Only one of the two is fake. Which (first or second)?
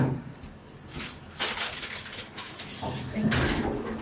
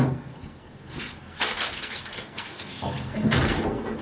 second